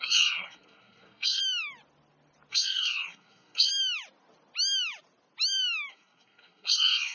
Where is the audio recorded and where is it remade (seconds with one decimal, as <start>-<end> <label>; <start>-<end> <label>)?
0.0-1.4 remade; 1.4-2.5 recorded; 2.5-3.7 remade; 3.7-5.9 recorded; 5.9-7.1 remade